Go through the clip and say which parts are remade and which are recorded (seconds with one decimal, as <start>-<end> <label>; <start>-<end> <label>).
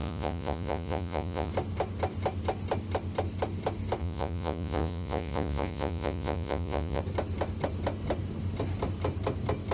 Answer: 0.0-1.5 remade; 1.5-4.0 recorded; 4.0-7.0 remade; 7.0-9.7 recorded